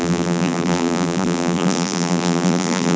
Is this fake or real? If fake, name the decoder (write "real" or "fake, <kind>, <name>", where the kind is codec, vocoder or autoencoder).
fake, vocoder, BigVGAN v2